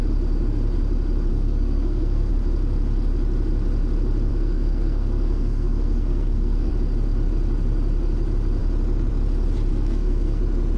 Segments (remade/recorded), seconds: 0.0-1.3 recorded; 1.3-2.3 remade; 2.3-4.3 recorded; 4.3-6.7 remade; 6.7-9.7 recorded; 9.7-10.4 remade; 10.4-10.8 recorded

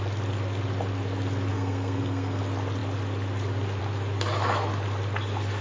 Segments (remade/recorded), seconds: 0.0-1.5 recorded; 1.5-2.4 remade; 2.4-5.6 recorded